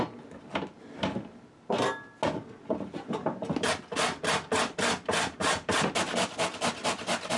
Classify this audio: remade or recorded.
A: recorded